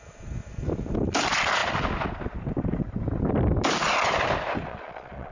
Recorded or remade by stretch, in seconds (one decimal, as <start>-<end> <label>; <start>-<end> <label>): 0.0-4.7 recorded; 4.7-5.3 remade